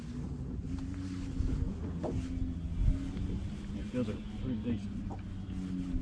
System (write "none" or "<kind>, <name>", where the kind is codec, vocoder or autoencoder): none